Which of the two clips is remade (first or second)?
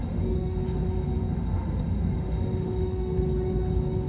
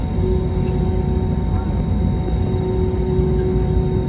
first